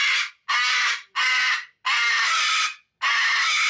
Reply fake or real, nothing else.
real